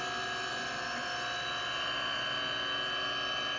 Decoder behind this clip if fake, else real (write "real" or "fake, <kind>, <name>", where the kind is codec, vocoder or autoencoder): real